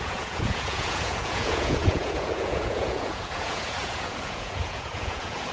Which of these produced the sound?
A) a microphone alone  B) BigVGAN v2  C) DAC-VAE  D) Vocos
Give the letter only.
D